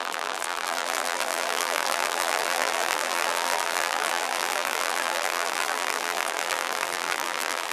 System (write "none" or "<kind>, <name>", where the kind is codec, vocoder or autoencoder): vocoder, BigVGAN v2